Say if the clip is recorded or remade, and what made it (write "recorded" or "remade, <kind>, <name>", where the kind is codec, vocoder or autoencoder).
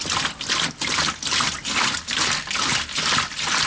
recorded